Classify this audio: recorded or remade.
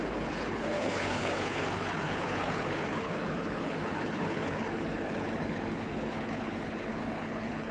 remade